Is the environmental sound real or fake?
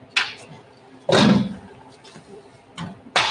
real